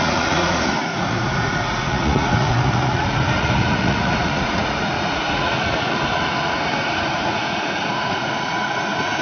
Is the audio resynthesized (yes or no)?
yes